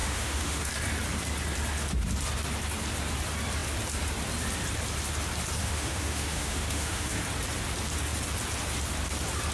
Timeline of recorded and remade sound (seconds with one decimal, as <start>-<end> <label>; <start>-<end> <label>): 0.0-0.7 remade; 0.7-5.6 recorded; 5.6-7.2 remade; 7.2-9.5 recorded